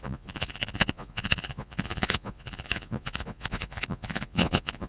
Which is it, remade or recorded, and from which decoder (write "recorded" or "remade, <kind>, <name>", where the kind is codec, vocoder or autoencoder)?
remade, vocoder, Vocos